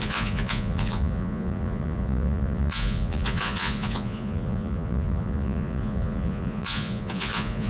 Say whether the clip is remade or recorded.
remade